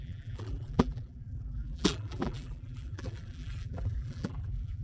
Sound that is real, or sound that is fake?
fake